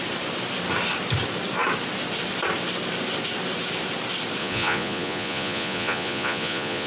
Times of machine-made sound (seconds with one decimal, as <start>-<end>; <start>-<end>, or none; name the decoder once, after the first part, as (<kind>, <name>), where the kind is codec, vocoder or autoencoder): 4.4-6.9 (vocoder, Vocos)